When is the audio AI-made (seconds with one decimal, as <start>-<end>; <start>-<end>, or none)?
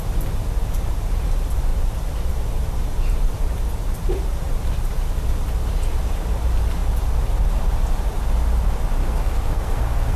9.0-10.2